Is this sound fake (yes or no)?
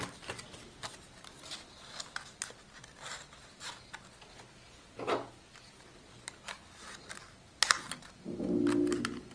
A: no